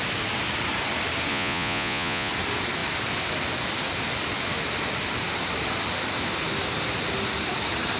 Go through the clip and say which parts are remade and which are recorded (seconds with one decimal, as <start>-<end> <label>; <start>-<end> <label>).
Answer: 0.0-1.3 recorded; 1.3-2.3 remade; 2.3-8.0 recorded